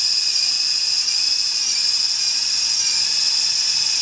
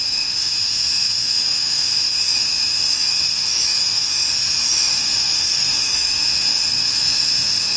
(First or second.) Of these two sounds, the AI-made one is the second